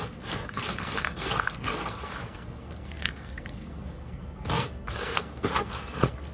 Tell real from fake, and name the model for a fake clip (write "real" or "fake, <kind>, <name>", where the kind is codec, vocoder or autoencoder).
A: fake, codec, SNAC